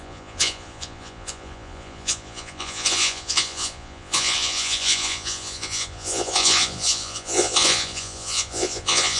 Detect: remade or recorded remade